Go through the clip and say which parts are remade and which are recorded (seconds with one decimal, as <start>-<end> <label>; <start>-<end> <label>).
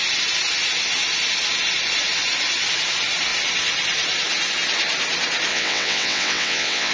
0.0-5.5 recorded; 5.5-6.9 remade